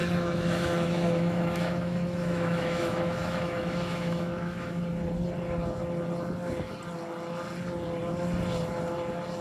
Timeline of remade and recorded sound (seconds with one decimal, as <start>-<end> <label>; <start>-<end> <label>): 0.0-4.8 remade; 4.8-9.4 recorded